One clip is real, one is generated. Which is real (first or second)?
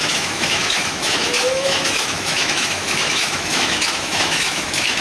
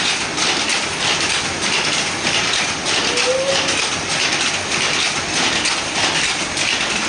second